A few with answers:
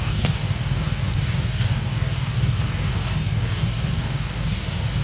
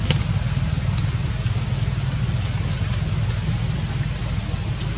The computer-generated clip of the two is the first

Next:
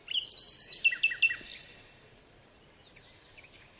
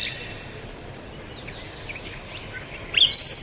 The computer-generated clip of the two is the first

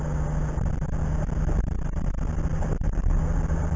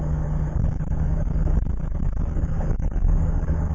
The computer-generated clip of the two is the second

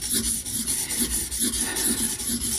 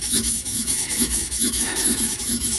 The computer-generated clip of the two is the second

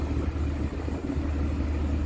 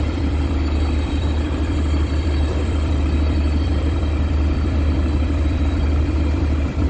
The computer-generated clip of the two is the second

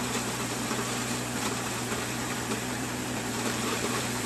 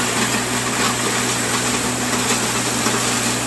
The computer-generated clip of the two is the first